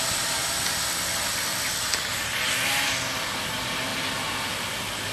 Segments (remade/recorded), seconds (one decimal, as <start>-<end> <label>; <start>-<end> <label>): 0.0-5.1 recorded